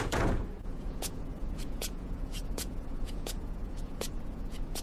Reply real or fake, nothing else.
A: fake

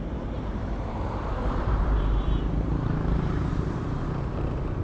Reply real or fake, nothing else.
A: fake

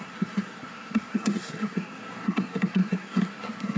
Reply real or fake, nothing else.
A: fake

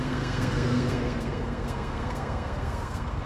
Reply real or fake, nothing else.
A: fake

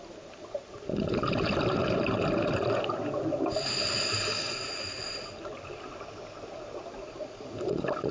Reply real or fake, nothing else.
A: real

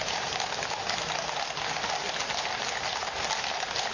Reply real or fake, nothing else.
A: real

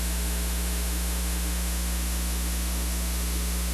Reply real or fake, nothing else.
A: fake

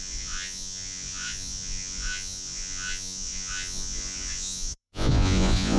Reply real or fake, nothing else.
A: fake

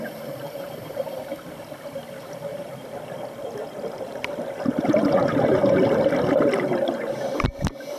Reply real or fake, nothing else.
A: real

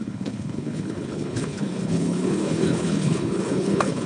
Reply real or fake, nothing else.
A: fake